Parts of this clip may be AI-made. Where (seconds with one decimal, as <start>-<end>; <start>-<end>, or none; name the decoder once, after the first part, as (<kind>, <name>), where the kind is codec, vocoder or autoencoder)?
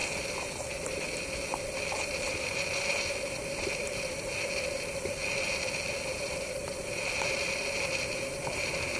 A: 0.7-5.2 (vocoder, BigVGAN v2); 6.1-9.0